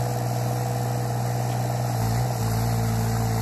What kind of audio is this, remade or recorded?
recorded